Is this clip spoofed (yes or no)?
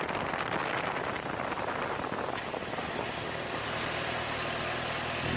no